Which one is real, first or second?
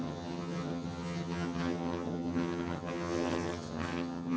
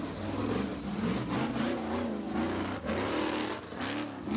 second